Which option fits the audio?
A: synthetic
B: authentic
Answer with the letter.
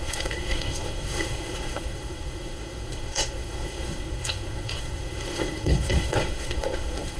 A